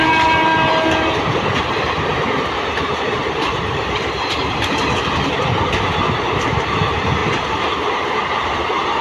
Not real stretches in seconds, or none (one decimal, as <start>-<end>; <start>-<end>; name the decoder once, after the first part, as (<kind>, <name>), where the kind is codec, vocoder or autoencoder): 0.0-0.5 (vocoder, BigVGAN v2); 1.2-9.0